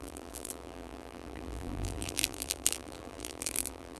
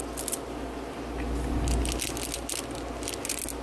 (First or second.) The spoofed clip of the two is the first